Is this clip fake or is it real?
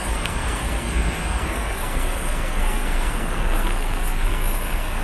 fake